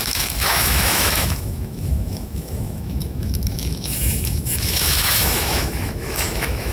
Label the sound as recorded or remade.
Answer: remade